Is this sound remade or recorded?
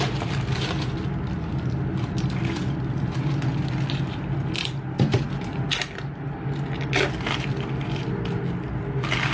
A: recorded